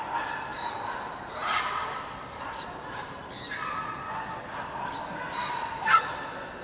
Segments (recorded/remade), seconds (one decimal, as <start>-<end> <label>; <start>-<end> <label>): 0.0-0.5 recorded; 0.5-1.6 remade; 1.6-6.6 recorded